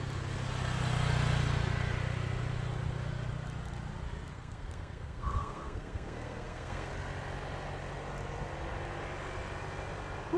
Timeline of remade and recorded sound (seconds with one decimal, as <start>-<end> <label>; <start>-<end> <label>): 0.0-4.3 recorded; 4.3-6.9 remade; 6.9-10.4 recorded